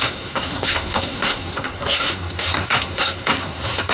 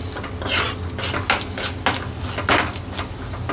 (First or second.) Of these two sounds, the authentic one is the second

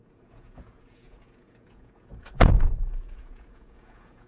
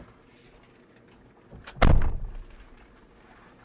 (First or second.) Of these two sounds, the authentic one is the second